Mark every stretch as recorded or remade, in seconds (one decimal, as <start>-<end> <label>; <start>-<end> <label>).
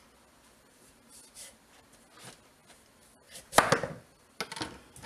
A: 0.0-5.1 recorded